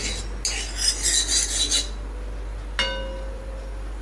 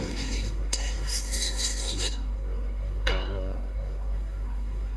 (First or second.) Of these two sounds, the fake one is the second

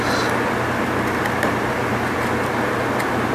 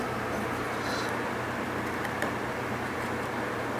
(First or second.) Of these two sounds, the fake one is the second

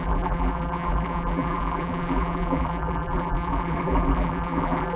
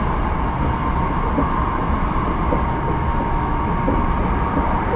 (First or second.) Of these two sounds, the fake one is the first